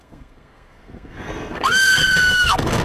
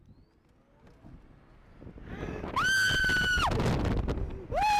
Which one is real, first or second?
second